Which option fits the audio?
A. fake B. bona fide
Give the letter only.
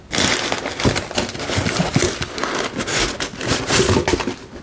B